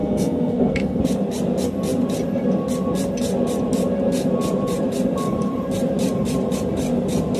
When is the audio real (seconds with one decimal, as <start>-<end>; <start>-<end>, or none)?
1.0-7.4